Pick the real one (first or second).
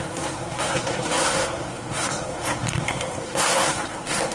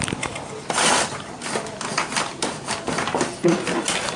second